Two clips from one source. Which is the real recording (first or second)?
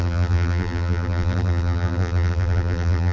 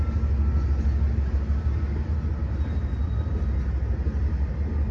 second